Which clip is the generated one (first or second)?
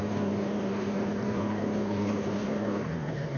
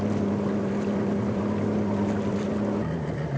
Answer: first